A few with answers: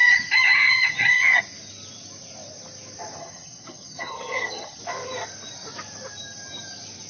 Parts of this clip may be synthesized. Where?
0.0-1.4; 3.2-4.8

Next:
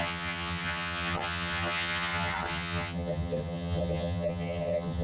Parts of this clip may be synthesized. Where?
0.0-5.0

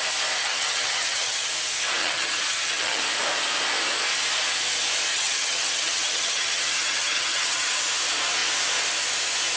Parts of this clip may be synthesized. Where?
0.4-1.5; 2.0-3.0; 5.1-7.8

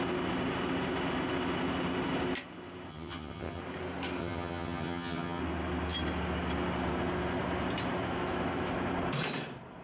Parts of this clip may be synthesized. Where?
2.9-3.6; 4.2-5.4

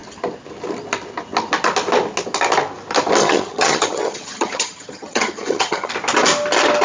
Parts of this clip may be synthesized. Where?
3.2-5.9

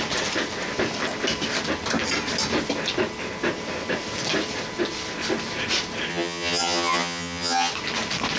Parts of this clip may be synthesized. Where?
6.1-7.7